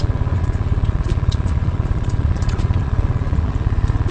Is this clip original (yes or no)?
no